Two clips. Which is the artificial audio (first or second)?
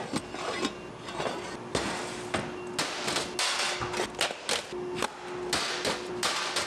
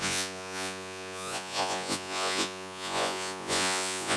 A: second